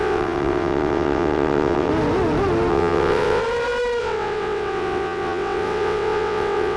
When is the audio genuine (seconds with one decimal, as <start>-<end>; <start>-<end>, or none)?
1.9-2.7; 3.4-4.0